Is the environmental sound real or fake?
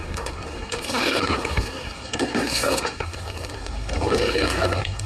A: fake